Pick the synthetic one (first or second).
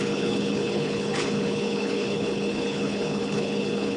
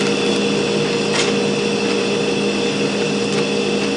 first